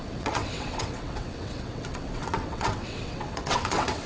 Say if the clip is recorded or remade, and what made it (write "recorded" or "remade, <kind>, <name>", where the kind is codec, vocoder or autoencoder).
remade, vocoder, WaveNeXt